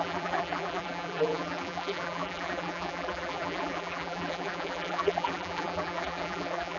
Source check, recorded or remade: remade